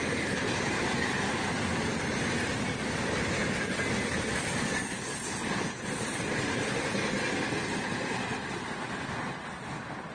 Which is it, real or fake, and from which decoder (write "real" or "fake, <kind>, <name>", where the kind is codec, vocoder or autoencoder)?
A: real